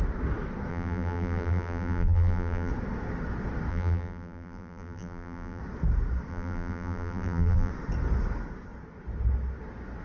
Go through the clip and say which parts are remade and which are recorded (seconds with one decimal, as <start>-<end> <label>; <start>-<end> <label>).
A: 0.0-0.7 recorded; 0.7-2.7 remade; 2.7-3.7 recorded; 3.7-5.6 remade; 5.6-6.3 recorded; 6.3-7.7 remade; 7.7-10.0 recorded